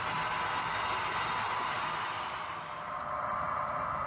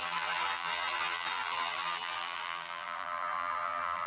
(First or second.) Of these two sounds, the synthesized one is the second